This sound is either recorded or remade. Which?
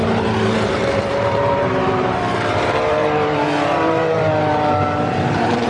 remade